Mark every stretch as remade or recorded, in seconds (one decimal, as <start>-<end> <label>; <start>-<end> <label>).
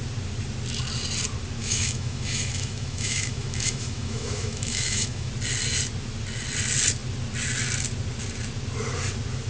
0.0-1.6 recorded; 1.6-5.3 remade; 5.3-9.5 recorded